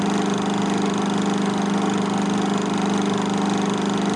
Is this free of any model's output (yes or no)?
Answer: yes